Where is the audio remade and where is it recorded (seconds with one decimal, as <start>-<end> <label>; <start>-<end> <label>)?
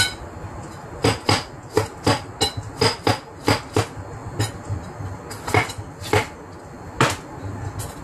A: 0.0-8.0 recorded